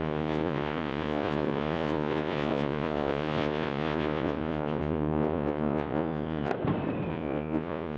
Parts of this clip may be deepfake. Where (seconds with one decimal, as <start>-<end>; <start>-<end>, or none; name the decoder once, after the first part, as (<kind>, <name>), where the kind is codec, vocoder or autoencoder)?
0.0-6.5 (vocoder, Vocos); 7.1-8.0